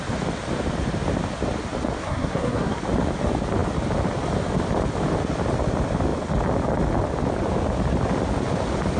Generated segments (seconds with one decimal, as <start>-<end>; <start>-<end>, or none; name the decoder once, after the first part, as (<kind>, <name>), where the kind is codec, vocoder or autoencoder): 2.0-2.8 (codec, SNAC)